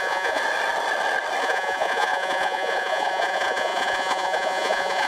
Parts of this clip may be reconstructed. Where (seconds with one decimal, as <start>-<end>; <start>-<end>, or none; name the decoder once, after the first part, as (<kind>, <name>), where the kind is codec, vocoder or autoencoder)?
0.0-0.4 (vocoder, Vocos); 1.4-5.1